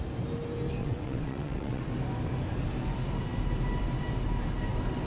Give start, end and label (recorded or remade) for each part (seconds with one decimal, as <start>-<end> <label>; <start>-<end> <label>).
0.0-0.8 recorded; 0.8-1.8 remade; 1.8-5.1 recorded